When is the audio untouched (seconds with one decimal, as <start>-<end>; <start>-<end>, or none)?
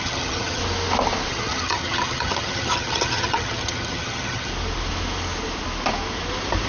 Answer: 0.6-1.3; 4.5-6.7